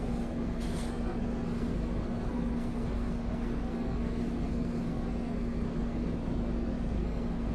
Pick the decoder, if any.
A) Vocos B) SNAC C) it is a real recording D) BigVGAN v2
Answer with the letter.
B